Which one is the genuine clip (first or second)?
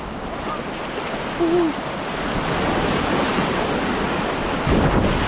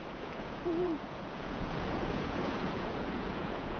first